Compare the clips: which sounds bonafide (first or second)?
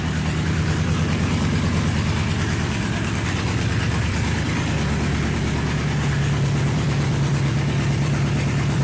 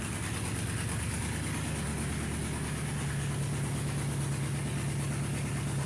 second